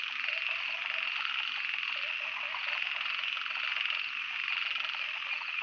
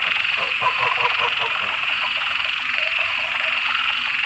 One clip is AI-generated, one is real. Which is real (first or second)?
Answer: first